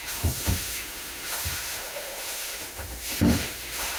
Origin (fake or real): fake